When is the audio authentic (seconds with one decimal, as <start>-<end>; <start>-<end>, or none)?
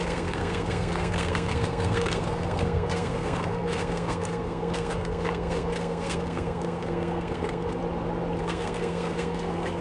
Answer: 7.8-8.4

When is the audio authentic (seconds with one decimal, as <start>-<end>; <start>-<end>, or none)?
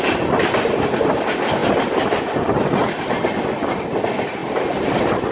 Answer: 0.0-5.3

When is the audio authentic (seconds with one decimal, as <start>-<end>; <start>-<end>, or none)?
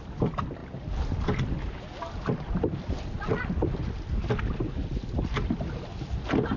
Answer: 0.0-6.6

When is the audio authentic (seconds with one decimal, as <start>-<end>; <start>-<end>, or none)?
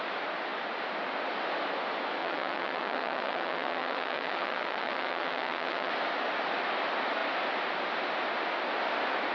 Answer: 0.0-2.2; 5.9-9.3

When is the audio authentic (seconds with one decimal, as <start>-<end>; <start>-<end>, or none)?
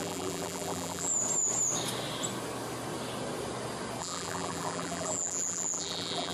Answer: 1.1-4.0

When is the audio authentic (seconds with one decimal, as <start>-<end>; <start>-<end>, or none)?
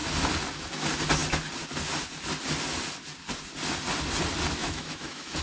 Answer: 0.0-4.6